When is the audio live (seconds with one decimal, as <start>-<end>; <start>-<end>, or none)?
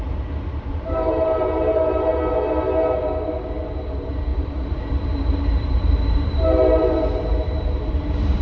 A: 2.1-3.9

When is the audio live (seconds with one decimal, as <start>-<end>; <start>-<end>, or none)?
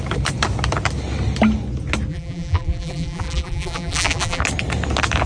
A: 0.0-2.1; 4.4-5.3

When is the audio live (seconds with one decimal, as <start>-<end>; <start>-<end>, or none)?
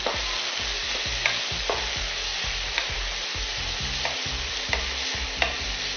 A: 0.0-0.8; 1.8-2.3; 4.5-6.0